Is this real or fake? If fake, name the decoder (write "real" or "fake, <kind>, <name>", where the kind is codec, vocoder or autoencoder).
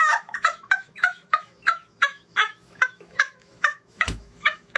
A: fake, autoencoder, DAC-VAE